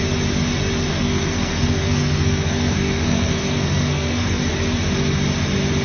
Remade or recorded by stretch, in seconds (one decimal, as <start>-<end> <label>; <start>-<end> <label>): 0.0-0.9 recorded; 0.9-4.4 remade; 4.4-5.8 recorded

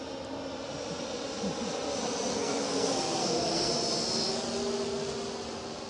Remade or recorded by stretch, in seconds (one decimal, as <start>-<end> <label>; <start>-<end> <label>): 0.0-2.3 recorded; 2.3-3.7 remade; 3.7-5.9 recorded

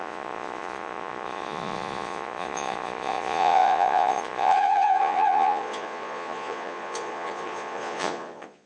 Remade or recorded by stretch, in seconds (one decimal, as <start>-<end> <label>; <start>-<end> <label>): 0.0-8.7 remade

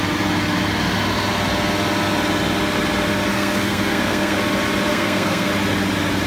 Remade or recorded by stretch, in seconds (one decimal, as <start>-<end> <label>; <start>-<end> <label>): 0.0-3.3 recorded; 3.3-4.4 remade; 4.4-4.9 recorded; 4.9-5.5 remade; 5.5-6.3 recorded

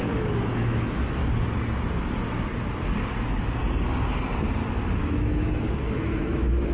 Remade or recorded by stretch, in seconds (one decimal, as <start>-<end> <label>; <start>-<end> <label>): 0.0-1.2 remade; 1.2-5.0 recorded; 5.0-6.7 remade

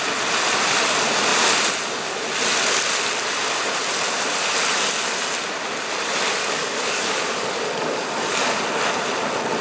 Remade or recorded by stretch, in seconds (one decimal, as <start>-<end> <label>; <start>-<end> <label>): 0.0-6.4 recorded; 6.4-8.6 remade; 8.6-9.6 recorded

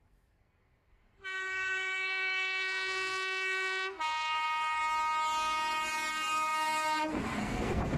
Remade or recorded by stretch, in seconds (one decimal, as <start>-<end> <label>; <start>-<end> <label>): 0.0-4.8 remade; 4.8-6.1 recorded; 6.1-8.0 remade